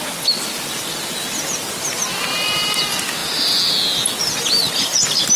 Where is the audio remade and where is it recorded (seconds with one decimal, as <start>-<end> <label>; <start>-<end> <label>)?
0.0-5.4 recorded